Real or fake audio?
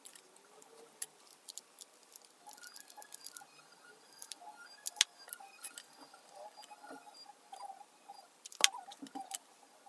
real